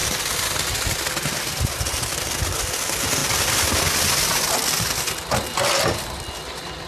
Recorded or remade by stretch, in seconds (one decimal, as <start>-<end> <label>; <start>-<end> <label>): 0.0-3.2 recorded; 3.2-3.8 remade; 3.8-6.9 recorded